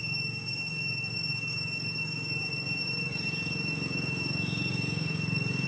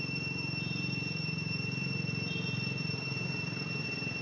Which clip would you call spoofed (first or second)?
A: first